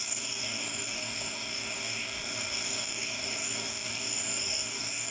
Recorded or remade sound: remade